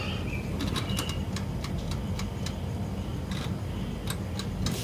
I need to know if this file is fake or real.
real